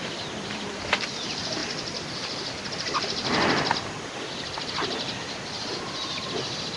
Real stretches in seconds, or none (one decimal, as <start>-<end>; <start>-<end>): 0.0-1.6; 5.7-6.8